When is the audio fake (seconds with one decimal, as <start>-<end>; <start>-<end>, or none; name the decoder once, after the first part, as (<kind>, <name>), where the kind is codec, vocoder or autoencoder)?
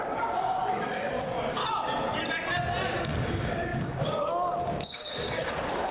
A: 0.0-1.6 (codec, DAC); 3.0-5.9